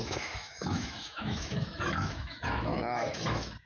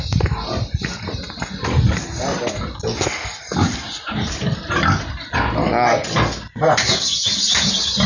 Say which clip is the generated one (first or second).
first